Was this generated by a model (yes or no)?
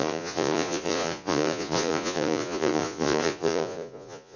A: yes